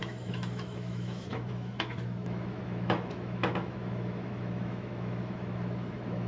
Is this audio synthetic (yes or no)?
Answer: yes